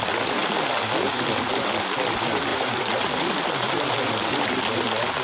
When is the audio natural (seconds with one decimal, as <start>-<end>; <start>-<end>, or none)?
0.0-2.5; 3.9-5.2